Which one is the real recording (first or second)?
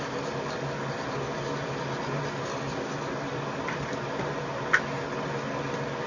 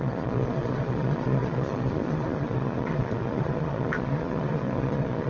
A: first